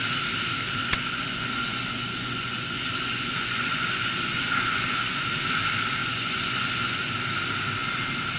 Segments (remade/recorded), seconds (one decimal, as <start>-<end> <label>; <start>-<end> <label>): 0.0-0.8 recorded; 0.8-5.2 remade; 5.2-6.0 recorded; 6.0-7.1 remade; 7.1-8.4 recorded